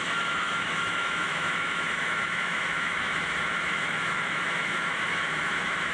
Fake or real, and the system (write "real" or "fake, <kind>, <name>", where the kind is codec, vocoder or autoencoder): fake, autoencoder, DAC-VAE